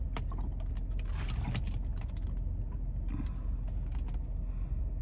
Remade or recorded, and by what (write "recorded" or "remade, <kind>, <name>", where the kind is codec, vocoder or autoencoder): recorded